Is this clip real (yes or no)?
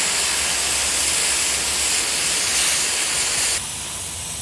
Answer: yes